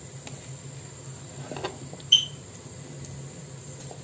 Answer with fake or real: real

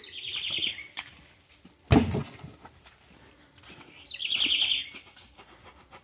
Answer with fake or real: real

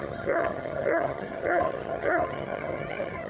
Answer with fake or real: fake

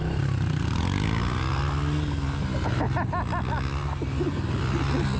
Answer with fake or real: real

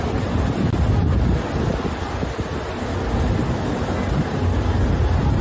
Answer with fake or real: real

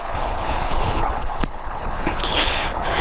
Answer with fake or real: fake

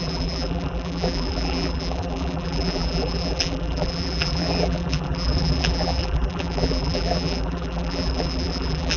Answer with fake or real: fake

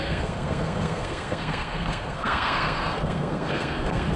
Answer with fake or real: fake